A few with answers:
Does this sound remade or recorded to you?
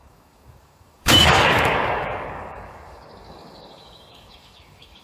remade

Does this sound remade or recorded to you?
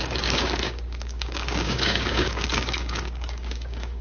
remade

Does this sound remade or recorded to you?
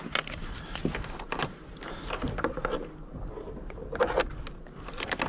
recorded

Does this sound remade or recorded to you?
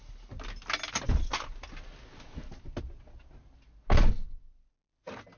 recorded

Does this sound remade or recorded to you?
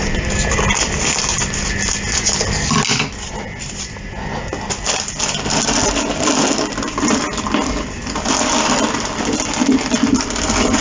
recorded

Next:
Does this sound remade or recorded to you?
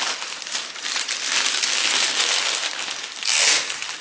recorded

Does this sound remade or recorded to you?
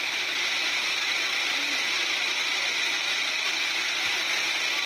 recorded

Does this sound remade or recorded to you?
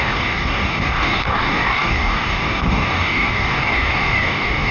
remade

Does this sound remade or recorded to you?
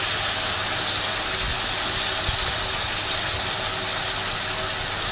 recorded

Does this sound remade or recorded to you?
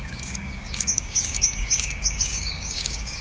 remade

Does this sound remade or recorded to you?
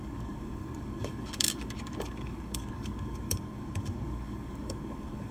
remade